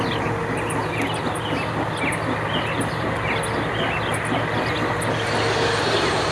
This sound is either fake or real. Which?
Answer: real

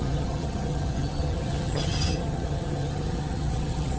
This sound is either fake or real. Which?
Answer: fake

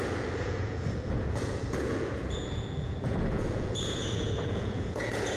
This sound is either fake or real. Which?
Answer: fake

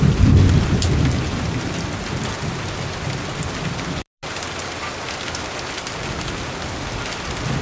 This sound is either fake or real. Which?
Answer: real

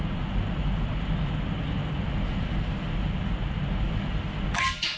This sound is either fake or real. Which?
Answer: real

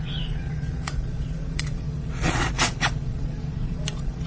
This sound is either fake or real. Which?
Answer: fake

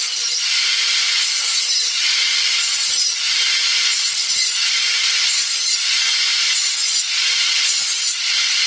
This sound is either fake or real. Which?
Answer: real